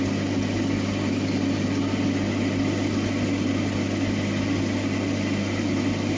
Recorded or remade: recorded